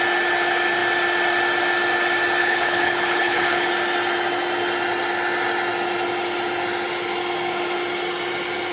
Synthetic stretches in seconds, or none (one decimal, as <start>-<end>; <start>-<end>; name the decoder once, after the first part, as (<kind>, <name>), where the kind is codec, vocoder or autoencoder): 2.4-3.7 (codec, HILCodec)